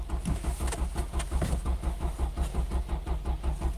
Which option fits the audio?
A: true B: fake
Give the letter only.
A